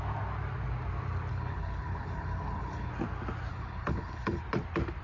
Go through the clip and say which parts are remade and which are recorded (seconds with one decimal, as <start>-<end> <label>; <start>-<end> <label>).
0.0-1.3 recorded; 1.3-2.9 remade; 2.9-3.5 recorded; 3.5-4.4 remade; 4.4-5.0 recorded

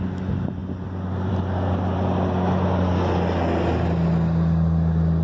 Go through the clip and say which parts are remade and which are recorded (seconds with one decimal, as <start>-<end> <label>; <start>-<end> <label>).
0.0-5.2 recorded

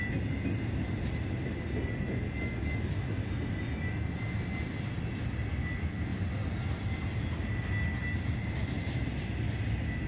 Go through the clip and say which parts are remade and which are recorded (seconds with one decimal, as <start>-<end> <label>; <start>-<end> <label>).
0.0-10.1 recorded

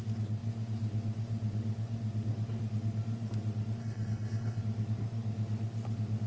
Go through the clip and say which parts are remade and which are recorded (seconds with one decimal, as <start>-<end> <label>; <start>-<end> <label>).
0.0-3.8 recorded; 3.8-4.6 remade; 4.6-6.3 recorded

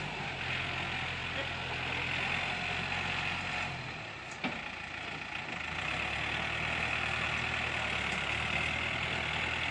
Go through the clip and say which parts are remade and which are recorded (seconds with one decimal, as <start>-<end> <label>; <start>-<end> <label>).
0.0-9.7 recorded